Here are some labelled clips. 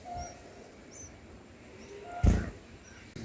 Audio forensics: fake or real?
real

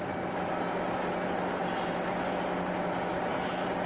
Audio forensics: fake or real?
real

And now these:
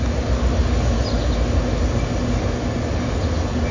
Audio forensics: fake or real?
real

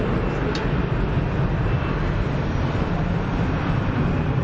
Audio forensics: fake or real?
real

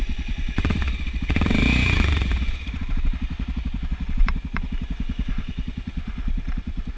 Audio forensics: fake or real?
fake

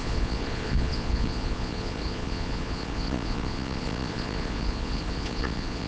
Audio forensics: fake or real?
fake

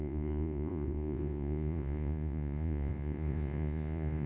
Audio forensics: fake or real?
fake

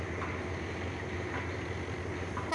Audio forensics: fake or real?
real